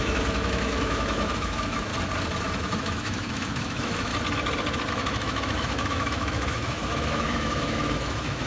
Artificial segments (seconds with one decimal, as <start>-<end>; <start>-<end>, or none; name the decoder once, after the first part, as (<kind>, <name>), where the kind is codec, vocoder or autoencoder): 0.0-1.9 (autoencoder, DAC-VAE); 2.6-4.1; 4.9-8.5